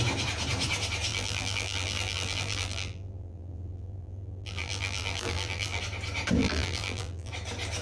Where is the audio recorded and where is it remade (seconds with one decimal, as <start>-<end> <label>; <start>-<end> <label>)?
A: 0.0-1.1 recorded; 1.1-5.8 remade; 5.8-6.4 recorded; 6.4-7.3 remade; 7.3-7.8 recorded